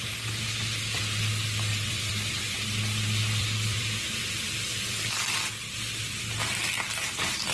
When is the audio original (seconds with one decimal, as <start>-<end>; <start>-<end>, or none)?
0.0-1.7; 5.5-7.5